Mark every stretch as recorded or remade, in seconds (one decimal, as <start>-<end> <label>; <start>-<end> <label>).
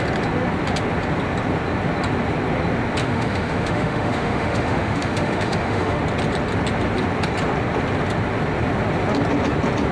0.0-3.0 recorded; 3.0-6.0 remade; 6.0-9.9 recorded